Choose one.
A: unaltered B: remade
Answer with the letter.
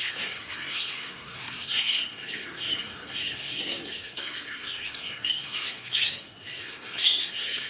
B